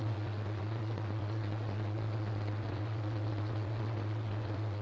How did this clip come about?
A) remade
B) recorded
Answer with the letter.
A